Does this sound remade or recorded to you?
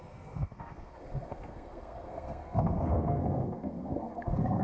remade